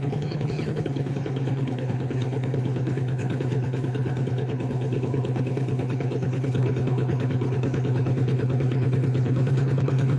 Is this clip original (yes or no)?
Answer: no